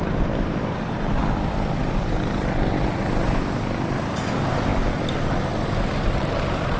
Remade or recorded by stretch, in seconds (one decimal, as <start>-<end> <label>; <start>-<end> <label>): 0.0-1.2 remade; 1.2-4.3 recorded; 4.3-6.8 remade